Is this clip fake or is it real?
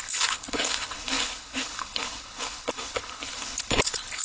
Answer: fake